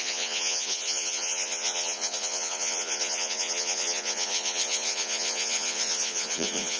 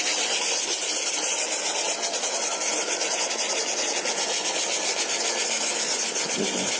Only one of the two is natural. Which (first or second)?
second